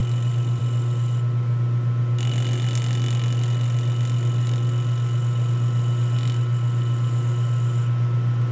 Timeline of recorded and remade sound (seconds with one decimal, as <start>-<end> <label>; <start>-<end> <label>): 0.0-8.5 recorded